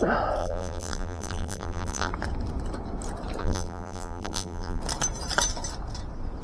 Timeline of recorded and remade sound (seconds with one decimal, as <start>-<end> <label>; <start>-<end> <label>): 0.0-0.4 recorded; 0.4-2.1 remade; 2.1-3.4 recorded; 3.4-4.8 remade; 4.8-6.4 recorded